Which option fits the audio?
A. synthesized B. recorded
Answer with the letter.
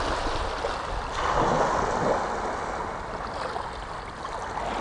B